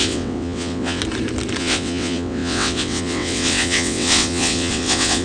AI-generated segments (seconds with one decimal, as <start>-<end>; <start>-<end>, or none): 0.0-1.0; 1.6-5.2